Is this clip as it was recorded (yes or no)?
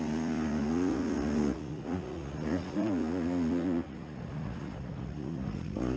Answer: no